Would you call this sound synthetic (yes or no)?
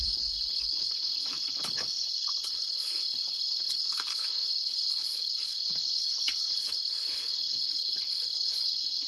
yes